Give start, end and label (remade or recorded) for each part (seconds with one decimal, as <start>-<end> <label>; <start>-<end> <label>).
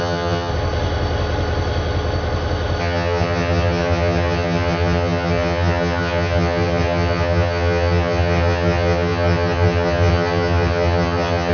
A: 0.0-0.5 remade; 0.5-2.8 recorded; 2.8-11.5 remade